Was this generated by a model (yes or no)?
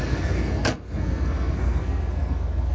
yes